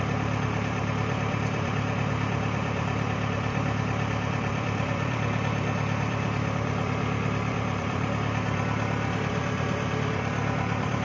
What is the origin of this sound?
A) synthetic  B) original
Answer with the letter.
A